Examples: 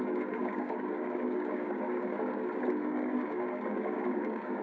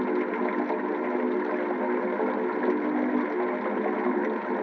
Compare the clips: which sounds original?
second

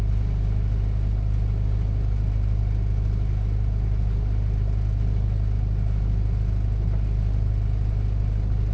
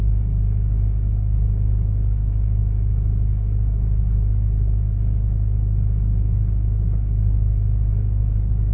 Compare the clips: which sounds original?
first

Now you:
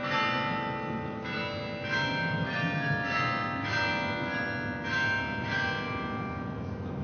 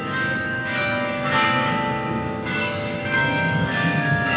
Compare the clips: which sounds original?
first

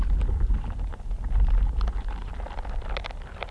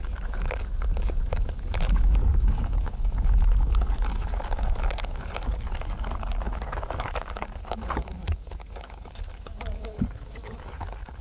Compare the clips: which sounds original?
first